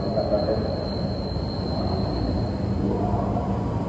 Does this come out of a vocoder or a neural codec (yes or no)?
no